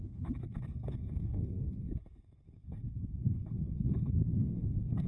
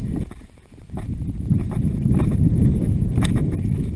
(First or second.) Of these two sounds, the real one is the second